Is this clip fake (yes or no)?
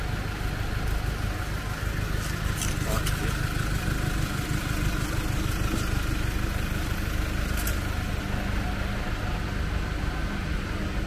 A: no